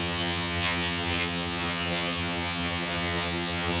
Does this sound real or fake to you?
fake